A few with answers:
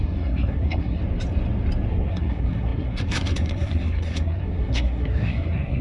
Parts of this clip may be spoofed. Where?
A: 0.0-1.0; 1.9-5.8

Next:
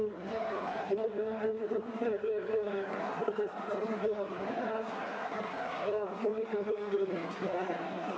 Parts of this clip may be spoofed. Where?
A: 0.0-8.2